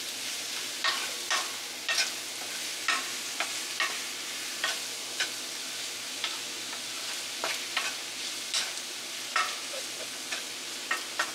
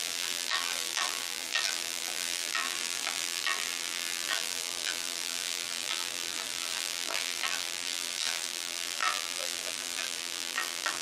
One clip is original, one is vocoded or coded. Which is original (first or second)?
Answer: first